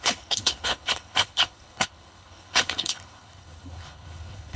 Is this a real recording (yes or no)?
no